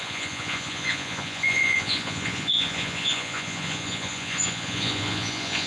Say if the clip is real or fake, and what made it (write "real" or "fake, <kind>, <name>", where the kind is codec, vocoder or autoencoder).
fake, vocoder, Vocos